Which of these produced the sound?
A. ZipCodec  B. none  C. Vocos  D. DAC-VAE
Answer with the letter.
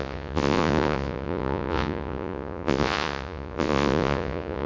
C